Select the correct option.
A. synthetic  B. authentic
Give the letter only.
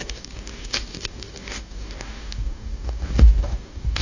A